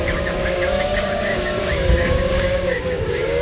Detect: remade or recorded remade